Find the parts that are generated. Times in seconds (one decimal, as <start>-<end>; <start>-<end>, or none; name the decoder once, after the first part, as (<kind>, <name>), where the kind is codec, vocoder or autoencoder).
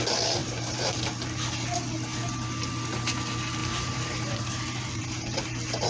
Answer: 0.4-1.0 (vocoder, BigVGAN v2); 3.6-5.4